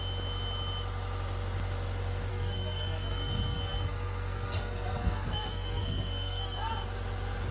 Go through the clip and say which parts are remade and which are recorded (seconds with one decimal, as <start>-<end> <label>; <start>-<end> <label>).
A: 0.0-2.3 recorded; 2.3-6.7 remade; 6.7-7.5 recorded